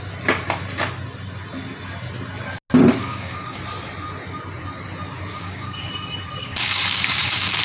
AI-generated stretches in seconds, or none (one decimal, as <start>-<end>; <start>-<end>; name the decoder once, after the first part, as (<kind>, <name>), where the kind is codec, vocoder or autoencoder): 3.0-3.6 (codec, DAC); 5.3-5.9; 6.4-7.6